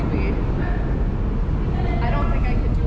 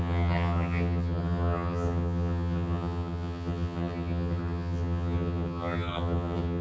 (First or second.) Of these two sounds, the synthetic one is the second